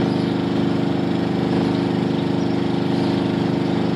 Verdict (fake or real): real